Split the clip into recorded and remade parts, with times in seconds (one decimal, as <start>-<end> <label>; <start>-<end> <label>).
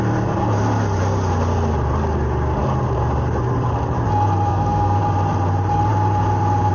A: 0.0-4.5 recorded; 4.5-5.0 remade; 5.0-6.7 recorded